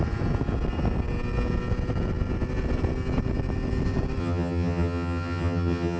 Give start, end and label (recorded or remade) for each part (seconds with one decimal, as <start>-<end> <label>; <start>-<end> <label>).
0.0-4.2 recorded; 4.2-6.0 remade